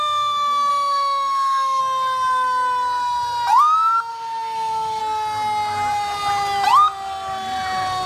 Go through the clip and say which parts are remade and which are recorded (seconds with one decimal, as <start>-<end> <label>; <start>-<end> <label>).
0.0-0.7 recorded; 0.7-1.8 remade; 1.8-4.1 recorded; 4.1-5.0 remade; 5.0-8.1 recorded